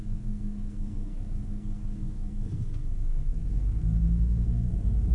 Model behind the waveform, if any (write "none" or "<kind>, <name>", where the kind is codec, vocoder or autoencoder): codec, SNAC